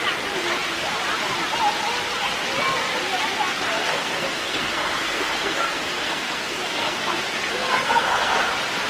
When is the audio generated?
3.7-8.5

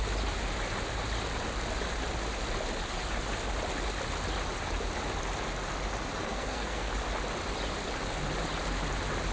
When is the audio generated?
6.2-6.9